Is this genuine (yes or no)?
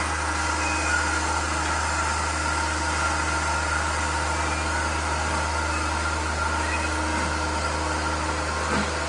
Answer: yes